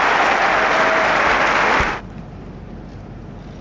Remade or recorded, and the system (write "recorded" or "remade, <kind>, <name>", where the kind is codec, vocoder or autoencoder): recorded